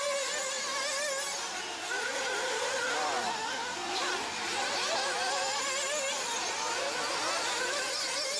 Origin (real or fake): real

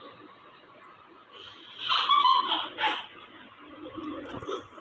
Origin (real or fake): fake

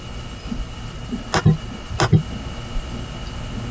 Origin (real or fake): real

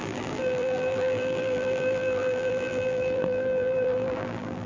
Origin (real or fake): fake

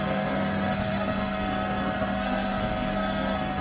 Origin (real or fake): fake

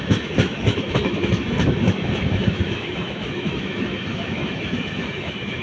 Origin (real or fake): fake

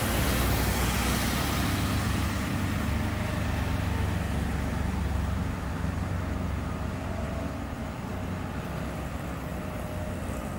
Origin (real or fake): real